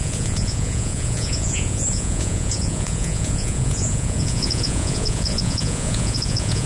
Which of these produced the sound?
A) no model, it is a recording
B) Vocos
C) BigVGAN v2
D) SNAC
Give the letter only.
B